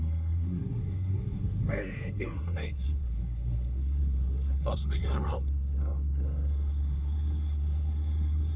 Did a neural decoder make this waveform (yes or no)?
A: yes